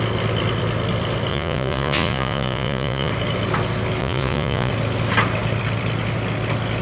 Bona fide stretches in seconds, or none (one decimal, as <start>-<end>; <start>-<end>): 0.0-1.3; 3.1-4.0; 4.7-6.8